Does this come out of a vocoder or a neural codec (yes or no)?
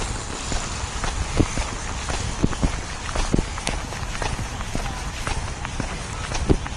no